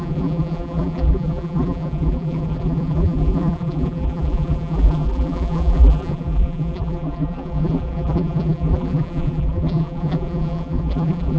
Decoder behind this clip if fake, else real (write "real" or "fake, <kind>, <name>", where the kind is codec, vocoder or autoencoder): fake, vocoder, BigVGAN v2